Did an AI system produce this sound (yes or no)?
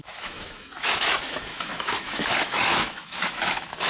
yes